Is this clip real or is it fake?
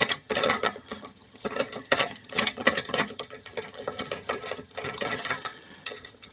fake